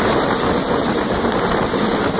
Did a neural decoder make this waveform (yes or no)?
no